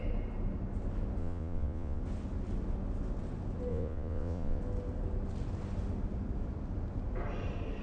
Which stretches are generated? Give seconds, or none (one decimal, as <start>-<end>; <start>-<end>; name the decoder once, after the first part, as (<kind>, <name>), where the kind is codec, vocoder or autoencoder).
1.2-2.0 (vocoder, Vocos); 3.7-4.6